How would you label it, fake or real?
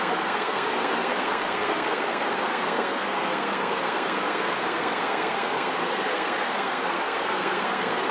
fake